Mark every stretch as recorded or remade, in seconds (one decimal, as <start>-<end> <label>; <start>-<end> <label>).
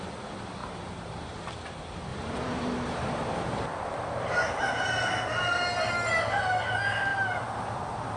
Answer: 0.0-0.6 recorded; 0.6-1.4 remade; 1.4-2.1 recorded; 2.1-3.1 remade; 3.1-7.1 recorded; 7.1-8.2 remade